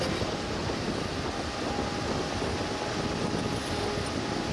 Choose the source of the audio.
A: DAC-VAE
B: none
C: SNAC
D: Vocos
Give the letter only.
B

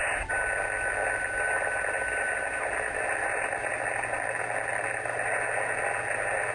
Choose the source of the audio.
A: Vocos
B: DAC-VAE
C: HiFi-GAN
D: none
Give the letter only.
D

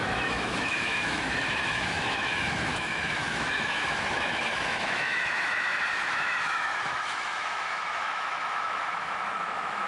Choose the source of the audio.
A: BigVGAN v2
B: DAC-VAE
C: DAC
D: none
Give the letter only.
B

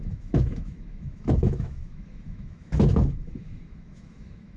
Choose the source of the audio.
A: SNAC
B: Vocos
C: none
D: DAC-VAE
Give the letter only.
D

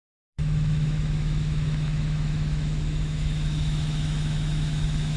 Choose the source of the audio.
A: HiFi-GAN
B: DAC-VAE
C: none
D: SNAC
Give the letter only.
B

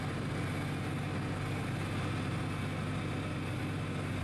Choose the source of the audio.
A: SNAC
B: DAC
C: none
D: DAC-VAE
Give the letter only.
C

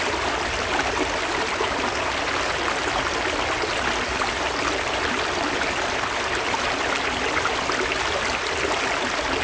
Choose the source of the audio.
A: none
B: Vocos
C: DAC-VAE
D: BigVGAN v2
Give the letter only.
A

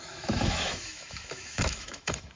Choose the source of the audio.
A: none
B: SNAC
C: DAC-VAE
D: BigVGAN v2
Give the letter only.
C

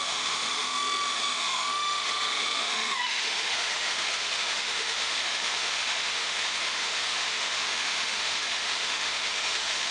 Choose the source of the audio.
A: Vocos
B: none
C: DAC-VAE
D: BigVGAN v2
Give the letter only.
C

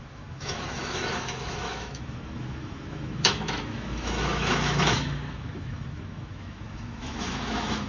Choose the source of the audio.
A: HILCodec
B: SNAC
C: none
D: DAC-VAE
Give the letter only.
D